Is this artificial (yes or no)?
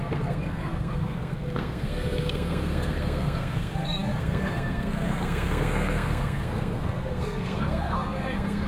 yes